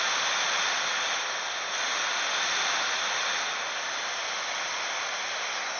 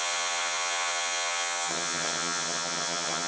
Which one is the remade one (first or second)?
second